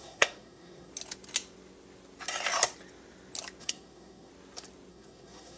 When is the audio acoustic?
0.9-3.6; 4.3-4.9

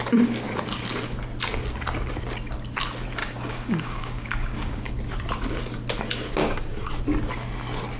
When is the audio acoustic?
0.0-3.2; 4.9-6.4; 6.9-8.0

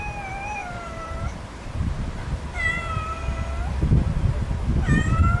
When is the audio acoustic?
0.0-0.6; 2.2-4.7

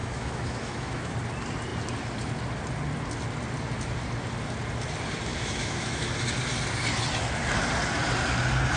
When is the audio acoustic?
1.1-5.3; 6.1-8.8

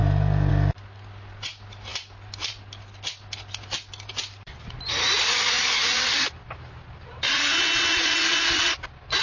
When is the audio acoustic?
0.0-9.2

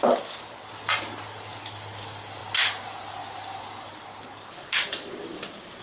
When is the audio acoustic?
0.0-5.8